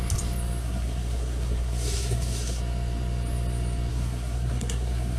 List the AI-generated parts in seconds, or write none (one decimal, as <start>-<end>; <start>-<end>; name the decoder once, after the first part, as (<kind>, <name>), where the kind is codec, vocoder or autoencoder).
0.6-2.6 (codec, SNAC); 3.9-5.2